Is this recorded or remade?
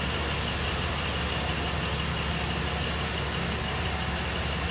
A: recorded